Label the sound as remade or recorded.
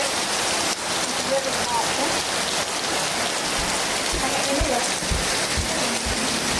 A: recorded